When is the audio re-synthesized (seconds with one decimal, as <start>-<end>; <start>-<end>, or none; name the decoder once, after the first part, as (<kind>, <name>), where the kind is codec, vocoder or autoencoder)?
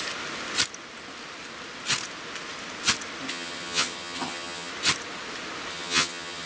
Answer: 3.3-4.7 (vocoder, HiFi-GAN); 5.7-6.5